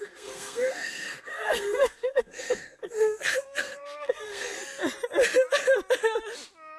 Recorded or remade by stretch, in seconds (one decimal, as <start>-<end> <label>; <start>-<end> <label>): 0.0-4.6 remade; 4.6-6.8 recorded